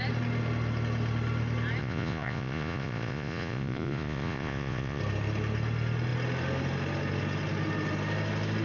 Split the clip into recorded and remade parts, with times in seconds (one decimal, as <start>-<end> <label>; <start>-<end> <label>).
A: 0.0-1.8 recorded; 1.8-5.0 remade; 5.0-8.6 recorded